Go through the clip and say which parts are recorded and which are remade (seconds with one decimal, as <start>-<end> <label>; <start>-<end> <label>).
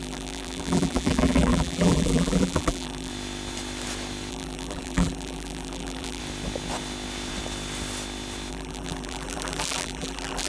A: 0.0-3.1 remade; 3.1-4.3 recorded; 4.3-6.2 remade; 6.2-8.5 recorded; 8.5-10.5 remade